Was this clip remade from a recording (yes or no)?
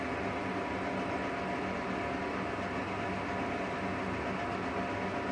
no